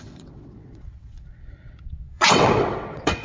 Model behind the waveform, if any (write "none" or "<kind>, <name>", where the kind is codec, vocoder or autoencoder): vocoder, WaveNeXt